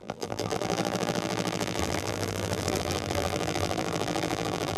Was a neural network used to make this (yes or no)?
yes